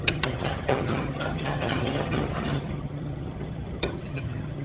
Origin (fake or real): fake